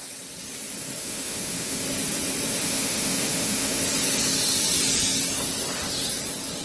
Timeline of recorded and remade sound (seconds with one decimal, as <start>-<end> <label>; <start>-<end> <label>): 0.0-1.0 recorded; 1.0-1.8 remade; 1.8-2.6 recorded; 2.6-3.8 remade; 3.8-6.6 recorded